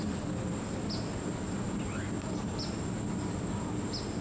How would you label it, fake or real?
real